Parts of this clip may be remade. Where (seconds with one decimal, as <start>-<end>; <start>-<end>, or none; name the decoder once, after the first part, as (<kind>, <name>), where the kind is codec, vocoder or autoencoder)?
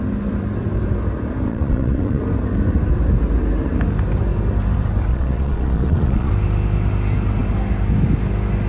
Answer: 1.5-2.2 (vocoder, Vocos); 5.1-6.3